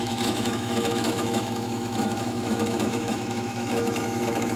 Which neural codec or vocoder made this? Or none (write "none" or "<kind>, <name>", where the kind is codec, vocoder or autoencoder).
autoencoder, DAC-VAE